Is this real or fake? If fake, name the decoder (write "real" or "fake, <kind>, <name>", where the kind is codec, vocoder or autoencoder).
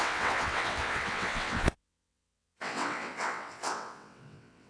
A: fake, vocoder, WaveNeXt